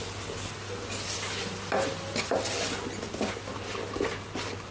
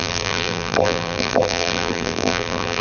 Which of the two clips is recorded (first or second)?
first